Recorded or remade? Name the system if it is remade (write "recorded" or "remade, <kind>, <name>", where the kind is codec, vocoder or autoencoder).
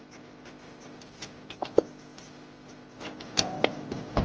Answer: recorded